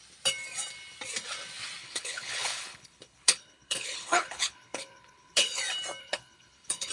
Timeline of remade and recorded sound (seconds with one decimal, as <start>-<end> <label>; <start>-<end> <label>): 0.0-1.8 recorded; 1.8-5.6 remade; 5.6-6.0 recorded; 6.0-6.9 remade